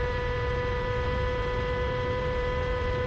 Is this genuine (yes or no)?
no